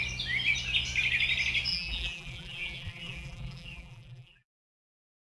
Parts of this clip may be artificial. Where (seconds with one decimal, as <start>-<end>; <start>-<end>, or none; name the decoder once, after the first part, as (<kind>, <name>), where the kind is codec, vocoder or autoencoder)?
1.7-4.8 (vocoder, BigVGAN v2)